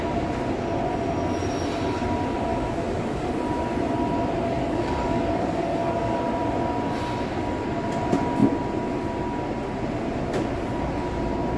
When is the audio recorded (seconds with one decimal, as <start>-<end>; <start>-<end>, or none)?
0.0-2.5; 3.3-4.6; 6.2-11.6

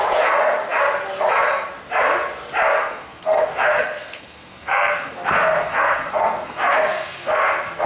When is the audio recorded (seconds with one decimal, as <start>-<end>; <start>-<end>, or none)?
0.0-2.8; 7.5-7.9